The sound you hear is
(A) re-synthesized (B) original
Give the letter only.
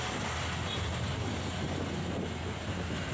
A